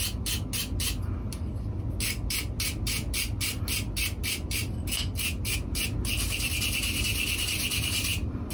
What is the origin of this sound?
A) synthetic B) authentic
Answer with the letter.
B